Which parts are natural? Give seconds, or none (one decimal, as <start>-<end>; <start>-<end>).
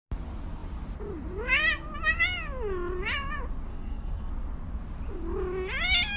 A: 0.0-3.7; 4.3-6.2